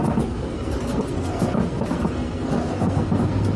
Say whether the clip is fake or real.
fake